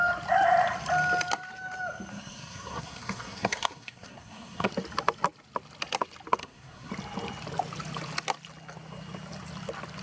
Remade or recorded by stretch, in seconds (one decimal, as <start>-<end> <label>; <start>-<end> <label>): 0.0-2.1 recorded; 2.1-4.7 remade; 4.7-6.4 recorded; 6.4-6.9 remade; 6.9-10.0 recorded